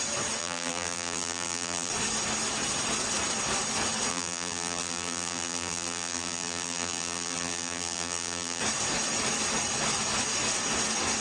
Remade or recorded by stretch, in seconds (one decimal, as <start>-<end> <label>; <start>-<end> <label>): 0.0-0.4 recorded; 0.4-1.9 remade; 1.9-4.1 recorded; 4.1-8.6 remade; 8.6-11.2 recorded

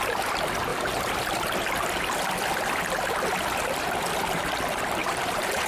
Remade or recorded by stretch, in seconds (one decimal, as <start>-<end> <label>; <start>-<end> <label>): 0.0-0.7 recorded; 0.7-1.2 remade; 1.2-5.0 recorded; 5.0-5.7 remade

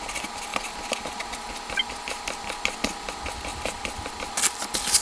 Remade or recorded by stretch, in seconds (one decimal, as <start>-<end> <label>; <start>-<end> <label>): 0.0-3.5 recorded; 3.5-4.1 remade; 4.1-5.0 recorded